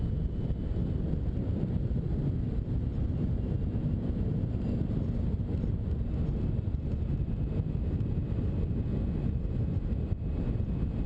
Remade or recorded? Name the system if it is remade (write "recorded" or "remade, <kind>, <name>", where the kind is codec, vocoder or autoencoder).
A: recorded